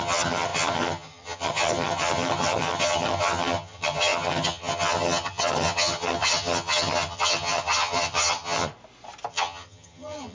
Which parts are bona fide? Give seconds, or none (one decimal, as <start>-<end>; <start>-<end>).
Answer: 8.7-9.3